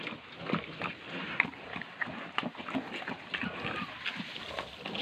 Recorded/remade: recorded